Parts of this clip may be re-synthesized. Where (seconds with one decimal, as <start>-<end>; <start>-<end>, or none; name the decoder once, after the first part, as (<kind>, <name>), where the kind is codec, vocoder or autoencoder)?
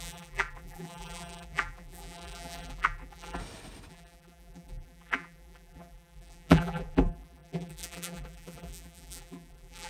0.0-3.4 (vocoder, BigVGAN v2); 3.9-9.9